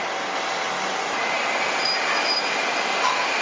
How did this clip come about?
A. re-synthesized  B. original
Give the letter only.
B